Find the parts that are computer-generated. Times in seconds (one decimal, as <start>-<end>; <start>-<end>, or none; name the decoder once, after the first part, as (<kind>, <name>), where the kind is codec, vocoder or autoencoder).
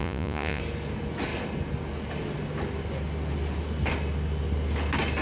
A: 0.0-0.6 (vocoder, Vocos)